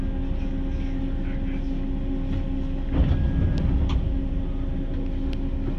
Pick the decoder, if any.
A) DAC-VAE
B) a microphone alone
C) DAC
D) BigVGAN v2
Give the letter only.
B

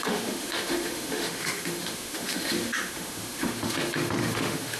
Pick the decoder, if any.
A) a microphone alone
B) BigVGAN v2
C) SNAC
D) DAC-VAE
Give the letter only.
D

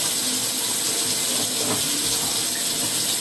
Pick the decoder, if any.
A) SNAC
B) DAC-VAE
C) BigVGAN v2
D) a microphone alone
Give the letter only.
D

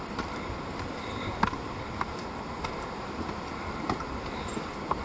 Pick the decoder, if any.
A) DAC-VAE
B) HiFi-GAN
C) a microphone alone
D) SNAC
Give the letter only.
C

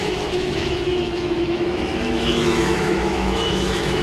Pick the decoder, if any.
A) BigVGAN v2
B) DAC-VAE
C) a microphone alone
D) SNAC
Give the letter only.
B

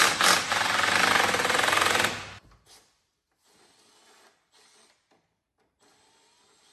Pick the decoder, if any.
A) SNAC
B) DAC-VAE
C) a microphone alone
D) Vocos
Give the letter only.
C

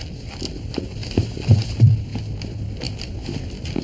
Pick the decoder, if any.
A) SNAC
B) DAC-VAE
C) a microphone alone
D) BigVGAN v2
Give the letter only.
C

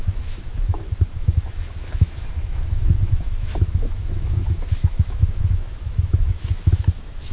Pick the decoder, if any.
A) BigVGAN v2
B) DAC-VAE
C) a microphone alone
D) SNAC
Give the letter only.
B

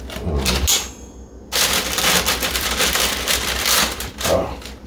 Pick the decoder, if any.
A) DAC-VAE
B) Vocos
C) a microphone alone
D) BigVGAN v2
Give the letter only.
C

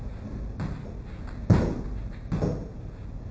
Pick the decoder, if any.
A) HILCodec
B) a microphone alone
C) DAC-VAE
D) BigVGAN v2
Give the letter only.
B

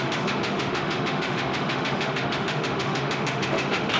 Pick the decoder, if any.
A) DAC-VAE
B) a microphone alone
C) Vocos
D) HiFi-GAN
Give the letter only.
A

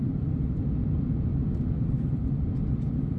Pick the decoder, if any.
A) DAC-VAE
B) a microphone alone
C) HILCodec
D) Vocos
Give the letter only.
B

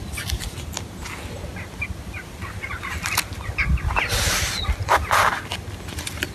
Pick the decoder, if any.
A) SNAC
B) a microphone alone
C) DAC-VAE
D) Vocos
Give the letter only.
B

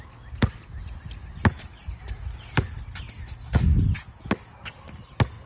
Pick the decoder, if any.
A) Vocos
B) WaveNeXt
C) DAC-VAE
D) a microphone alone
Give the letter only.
D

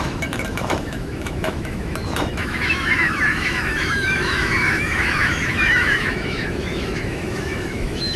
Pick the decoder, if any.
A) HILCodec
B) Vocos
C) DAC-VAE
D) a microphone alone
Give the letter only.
C